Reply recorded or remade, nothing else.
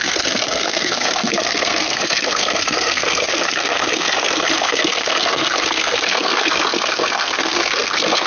remade